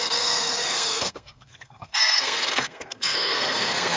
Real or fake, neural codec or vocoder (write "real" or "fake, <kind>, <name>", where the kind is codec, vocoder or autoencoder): fake, codec, SNAC